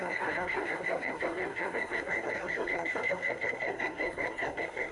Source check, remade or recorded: remade